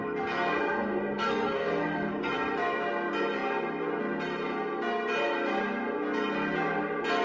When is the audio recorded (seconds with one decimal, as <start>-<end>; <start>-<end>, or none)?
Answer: 0.0-0.6; 2.3-7.2